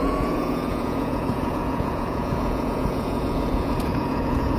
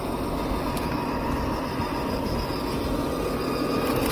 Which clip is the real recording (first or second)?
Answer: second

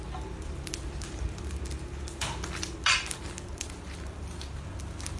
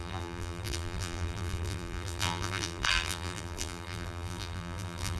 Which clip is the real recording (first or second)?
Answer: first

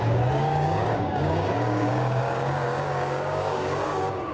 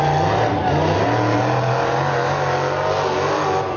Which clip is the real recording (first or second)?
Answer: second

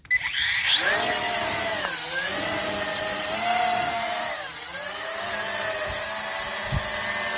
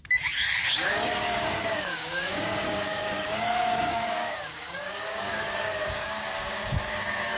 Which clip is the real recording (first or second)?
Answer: first